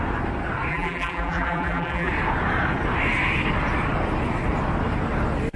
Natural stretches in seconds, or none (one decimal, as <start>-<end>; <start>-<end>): 0.0-0.7; 2.1-5.6